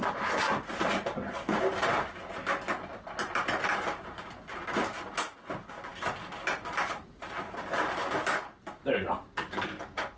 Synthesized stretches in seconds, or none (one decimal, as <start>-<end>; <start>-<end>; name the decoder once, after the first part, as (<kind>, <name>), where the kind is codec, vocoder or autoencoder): none